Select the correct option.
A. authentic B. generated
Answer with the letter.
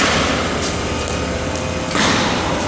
A